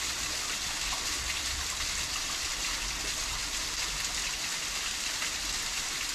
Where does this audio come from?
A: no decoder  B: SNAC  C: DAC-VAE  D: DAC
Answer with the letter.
A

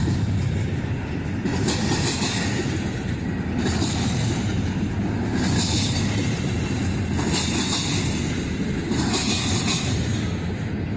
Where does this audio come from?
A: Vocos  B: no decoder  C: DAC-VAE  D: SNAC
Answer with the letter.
B